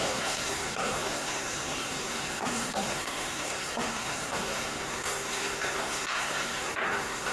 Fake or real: fake